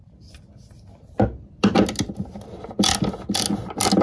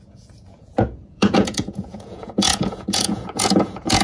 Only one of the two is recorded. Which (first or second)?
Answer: first